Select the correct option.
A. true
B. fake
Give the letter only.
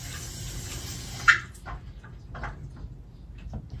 A